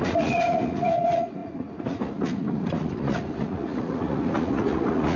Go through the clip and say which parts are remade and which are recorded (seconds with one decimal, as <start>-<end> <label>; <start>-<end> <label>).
0.0-5.2 remade